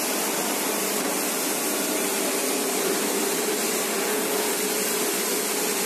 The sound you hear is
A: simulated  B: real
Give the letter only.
B